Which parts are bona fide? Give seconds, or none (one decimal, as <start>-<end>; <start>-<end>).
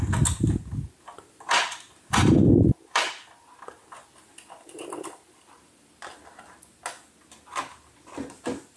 0.0-1.1; 5.9-8.8